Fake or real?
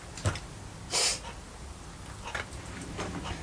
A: real